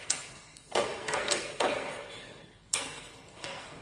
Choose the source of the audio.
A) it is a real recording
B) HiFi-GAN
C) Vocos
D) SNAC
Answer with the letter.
D